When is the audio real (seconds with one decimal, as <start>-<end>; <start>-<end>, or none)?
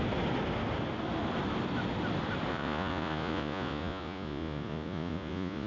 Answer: 0.0-2.5